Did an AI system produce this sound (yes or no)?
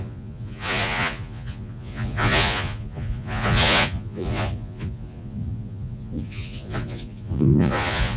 yes